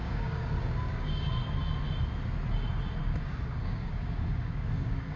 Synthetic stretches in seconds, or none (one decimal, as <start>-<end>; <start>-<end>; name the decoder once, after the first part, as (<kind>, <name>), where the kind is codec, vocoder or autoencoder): 0.0-1.3 (codec, DAC); 3.0-5.2